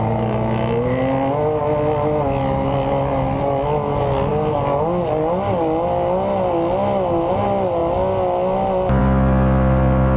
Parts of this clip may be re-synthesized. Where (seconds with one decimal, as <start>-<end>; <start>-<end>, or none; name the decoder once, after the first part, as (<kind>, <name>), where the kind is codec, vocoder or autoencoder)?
none